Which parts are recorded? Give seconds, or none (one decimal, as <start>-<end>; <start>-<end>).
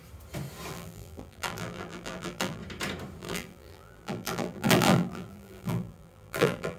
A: 0.0-0.7; 2.6-3.2